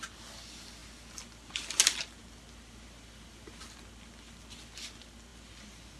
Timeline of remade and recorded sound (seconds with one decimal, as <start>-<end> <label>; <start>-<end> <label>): 0.0-6.0 recorded